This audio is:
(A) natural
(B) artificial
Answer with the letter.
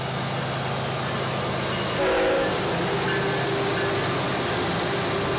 A